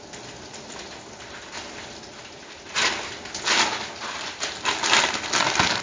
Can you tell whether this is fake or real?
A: real